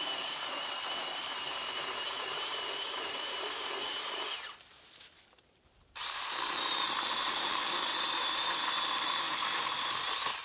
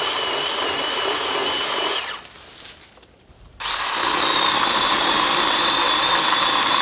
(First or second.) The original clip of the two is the second